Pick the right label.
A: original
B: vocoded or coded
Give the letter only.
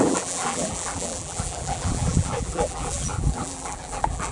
B